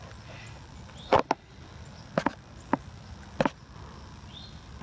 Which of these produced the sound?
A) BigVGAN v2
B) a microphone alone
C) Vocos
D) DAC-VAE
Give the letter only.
B